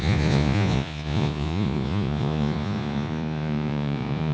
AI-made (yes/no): yes